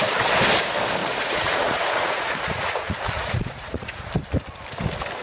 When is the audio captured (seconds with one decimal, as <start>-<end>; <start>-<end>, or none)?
0.0-1.0; 4.1-5.2